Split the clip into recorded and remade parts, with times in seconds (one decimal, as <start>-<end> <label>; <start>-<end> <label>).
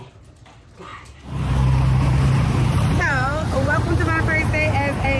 0.0-0.9 recorded; 0.9-4.0 remade; 4.0-5.2 recorded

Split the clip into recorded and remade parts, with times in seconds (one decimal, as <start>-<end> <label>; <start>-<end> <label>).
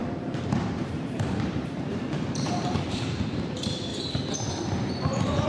0.0-3.9 remade; 3.9-4.6 recorded; 4.6-5.5 remade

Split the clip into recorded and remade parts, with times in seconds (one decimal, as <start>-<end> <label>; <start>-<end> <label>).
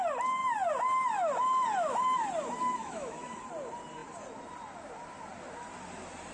0.0-2.8 recorded; 2.8-3.4 remade; 3.4-6.3 recorded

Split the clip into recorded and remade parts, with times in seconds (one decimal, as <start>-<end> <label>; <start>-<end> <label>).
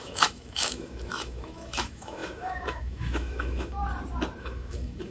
0.0-3.8 remade; 3.8-4.4 recorded; 4.4-5.1 remade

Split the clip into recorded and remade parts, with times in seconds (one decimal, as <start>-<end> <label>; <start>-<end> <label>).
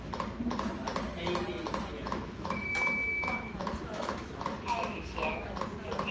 0.0-1.9 recorded; 1.9-5.6 remade; 5.6-6.1 recorded